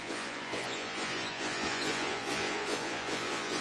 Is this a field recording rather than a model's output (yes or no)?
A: no